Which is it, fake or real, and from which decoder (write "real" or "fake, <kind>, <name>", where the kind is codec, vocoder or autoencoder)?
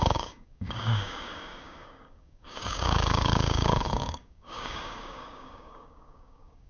fake, codec, DAC